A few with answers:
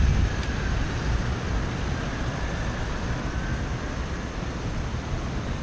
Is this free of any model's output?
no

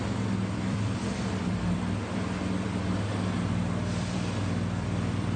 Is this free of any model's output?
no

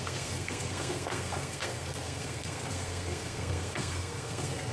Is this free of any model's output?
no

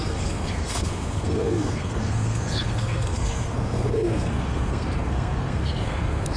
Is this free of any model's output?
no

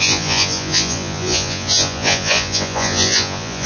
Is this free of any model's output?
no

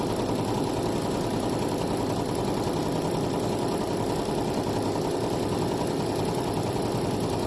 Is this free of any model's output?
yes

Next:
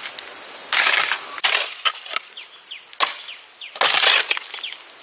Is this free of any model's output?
yes